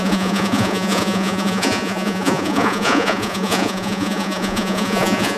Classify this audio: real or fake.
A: fake